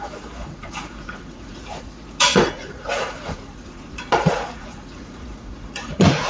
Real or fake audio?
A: fake